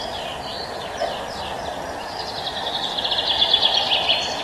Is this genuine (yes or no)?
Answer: yes